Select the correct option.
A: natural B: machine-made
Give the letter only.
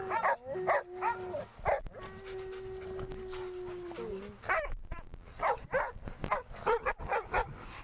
A